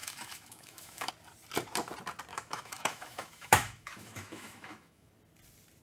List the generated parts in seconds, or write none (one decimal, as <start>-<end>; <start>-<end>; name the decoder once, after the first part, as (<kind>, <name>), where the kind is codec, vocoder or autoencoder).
0.0-1.1 (autoencoder, DAC-VAE); 2.3-5.1